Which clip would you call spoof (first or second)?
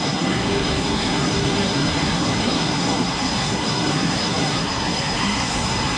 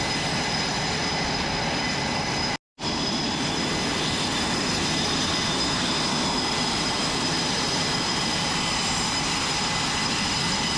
first